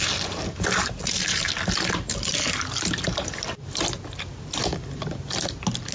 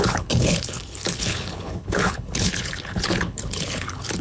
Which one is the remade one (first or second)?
second